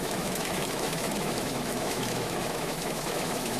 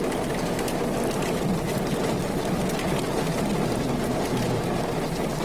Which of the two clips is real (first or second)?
second